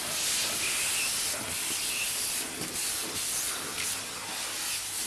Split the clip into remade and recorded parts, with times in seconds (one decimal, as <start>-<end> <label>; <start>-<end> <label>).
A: 0.0-2.8 recorded; 2.8-4.0 remade; 4.0-5.1 recorded

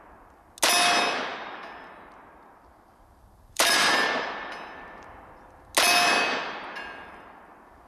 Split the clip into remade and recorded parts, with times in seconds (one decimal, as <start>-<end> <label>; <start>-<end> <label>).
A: 0.0-1.3 recorded; 1.3-2.3 remade; 2.3-2.9 recorded; 2.9-5.3 remade; 5.3-6.4 recorded; 6.4-7.4 remade; 7.4-7.9 recorded

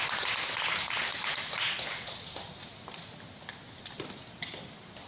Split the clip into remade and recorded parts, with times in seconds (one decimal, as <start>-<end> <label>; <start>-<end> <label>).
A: 0.0-2.7 recorded; 2.7-3.4 remade; 3.4-5.1 recorded

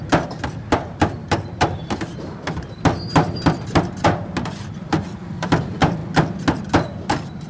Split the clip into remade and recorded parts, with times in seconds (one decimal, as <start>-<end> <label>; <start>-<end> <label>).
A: 0.0-6.0 remade; 6.0-6.7 recorded; 6.7-7.5 remade